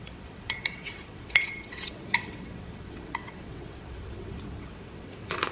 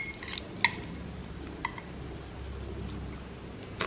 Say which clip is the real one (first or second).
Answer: second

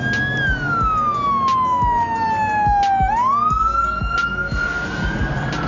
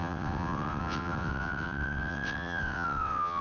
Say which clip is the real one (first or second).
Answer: first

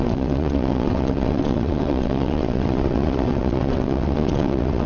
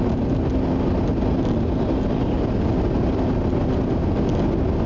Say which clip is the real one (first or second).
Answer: second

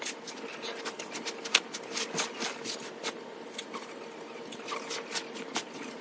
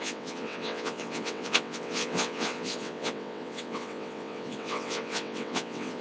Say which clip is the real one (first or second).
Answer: first